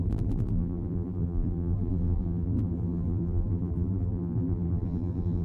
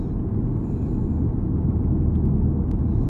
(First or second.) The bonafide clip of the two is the second